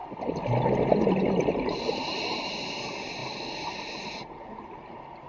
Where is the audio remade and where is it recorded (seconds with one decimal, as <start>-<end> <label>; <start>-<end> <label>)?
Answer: 0.0-5.3 recorded